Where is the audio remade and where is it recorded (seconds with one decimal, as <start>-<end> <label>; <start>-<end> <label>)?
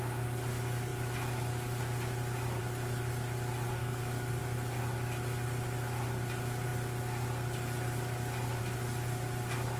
0.0-3.8 recorded; 3.8-4.4 remade; 4.4-9.8 recorded